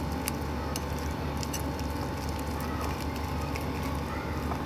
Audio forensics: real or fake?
real